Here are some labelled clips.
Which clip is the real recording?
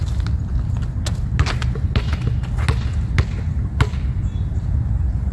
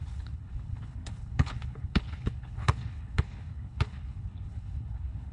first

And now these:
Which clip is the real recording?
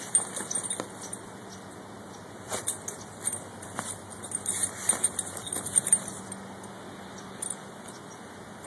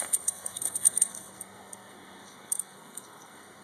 first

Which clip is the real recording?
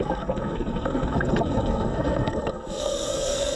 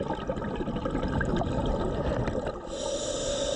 second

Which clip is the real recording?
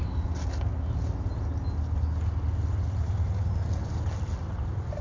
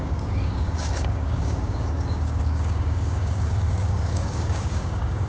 first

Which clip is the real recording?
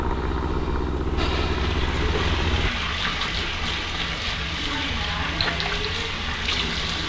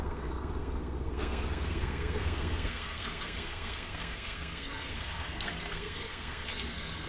first